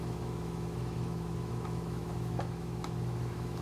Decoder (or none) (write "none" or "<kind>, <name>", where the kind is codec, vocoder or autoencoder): autoencoder, DAC-VAE